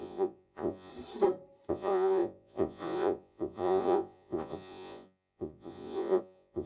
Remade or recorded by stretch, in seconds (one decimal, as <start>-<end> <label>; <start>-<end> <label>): 0.0-0.9 remade; 0.9-1.7 recorded; 1.7-6.7 remade